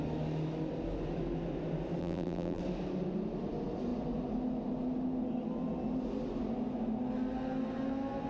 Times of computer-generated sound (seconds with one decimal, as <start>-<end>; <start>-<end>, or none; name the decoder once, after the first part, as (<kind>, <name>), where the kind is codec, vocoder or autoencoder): 2.0-2.6 (vocoder, BigVGAN v2)

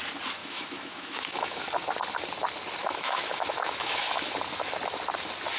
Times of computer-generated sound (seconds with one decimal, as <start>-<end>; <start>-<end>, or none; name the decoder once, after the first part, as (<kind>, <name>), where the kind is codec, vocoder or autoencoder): 0.4-1.7 (autoencoder, DAC-VAE); 2.8-4.0

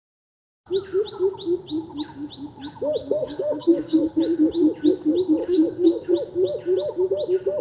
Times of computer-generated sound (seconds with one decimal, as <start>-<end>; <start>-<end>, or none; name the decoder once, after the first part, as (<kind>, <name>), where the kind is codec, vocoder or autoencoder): 3.0-4.2 (codec, SNAC); 5.4-6.1

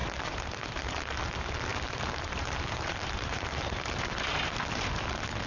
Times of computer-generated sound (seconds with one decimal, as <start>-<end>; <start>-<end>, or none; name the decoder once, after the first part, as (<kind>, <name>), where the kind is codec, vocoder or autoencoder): 0.0-1.0 (vocoder, BigVGAN v2); 1.7-5.0

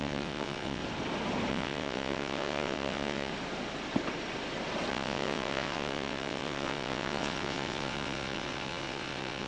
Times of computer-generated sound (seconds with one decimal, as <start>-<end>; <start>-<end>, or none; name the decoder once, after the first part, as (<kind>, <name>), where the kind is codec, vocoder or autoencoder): 0.0-0.8 (vocoder, WaveNeXt); 1.5-3.3; 4.9-9.5

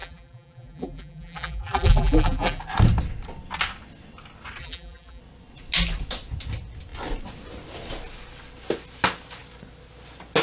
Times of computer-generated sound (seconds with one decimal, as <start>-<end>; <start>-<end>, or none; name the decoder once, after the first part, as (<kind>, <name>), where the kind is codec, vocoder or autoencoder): 0.0-2.6 (vocoder, BigVGAN v2); 4.6-5.2

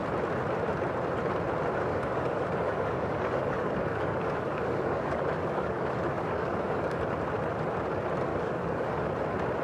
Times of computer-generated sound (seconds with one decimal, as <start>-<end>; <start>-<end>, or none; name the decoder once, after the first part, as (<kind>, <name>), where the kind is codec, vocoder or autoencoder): 1.9-7.0 (codec, DAC); 8.3-9.1